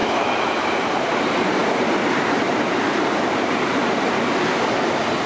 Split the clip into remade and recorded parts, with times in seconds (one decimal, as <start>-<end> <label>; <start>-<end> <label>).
0.0-0.6 remade; 0.6-5.3 recorded